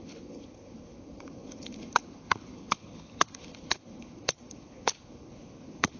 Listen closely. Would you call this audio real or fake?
fake